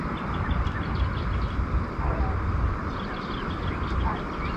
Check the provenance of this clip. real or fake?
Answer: real